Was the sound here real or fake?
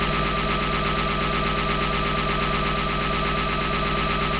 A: real